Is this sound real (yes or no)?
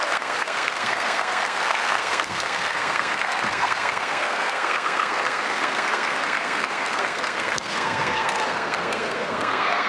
no